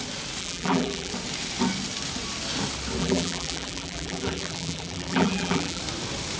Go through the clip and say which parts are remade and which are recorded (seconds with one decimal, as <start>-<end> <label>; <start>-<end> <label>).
0.0-0.4 recorded; 0.4-1.1 remade; 1.1-3.0 recorded; 3.0-5.8 remade; 5.8-6.4 recorded